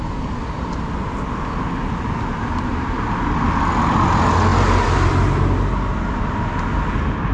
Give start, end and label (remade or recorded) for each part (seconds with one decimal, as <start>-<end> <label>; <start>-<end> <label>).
0.0-7.3 recorded